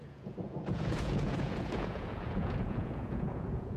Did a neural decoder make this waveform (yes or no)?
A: yes